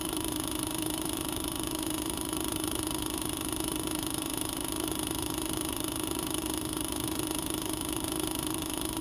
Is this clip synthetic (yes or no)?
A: yes